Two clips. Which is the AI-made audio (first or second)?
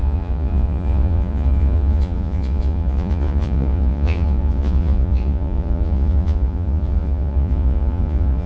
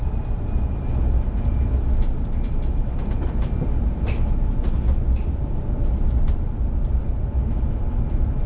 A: first